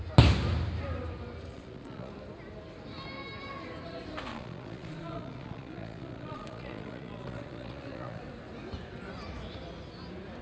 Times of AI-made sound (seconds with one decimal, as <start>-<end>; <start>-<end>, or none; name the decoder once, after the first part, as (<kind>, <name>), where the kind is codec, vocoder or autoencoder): 1.5-2.1 (vocoder, Vocos); 4.3-8.2